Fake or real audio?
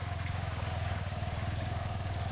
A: fake